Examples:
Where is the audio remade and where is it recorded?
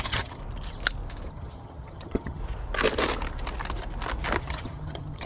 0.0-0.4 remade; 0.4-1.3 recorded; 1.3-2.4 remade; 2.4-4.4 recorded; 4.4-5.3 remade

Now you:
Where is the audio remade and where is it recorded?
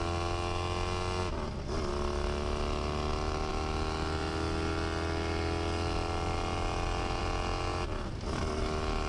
0.0-1.2 recorded; 1.2-1.9 remade; 1.9-7.7 recorded; 7.7-8.4 remade; 8.4-9.1 recorded